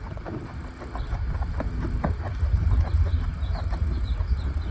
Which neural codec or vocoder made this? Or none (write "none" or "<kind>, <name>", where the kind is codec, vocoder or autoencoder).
none